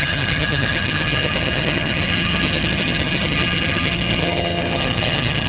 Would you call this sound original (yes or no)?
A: no